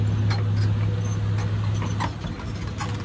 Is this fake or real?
real